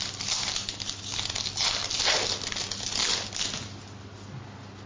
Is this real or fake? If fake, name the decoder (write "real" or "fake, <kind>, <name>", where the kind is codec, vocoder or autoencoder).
real